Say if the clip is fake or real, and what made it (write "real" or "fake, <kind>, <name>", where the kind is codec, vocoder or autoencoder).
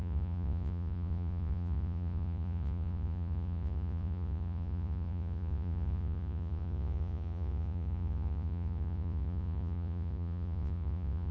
fake, vocoder, Vocos